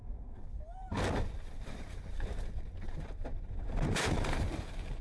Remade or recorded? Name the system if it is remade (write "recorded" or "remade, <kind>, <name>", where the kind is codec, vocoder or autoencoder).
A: remade, vocoder, BigVGAN v2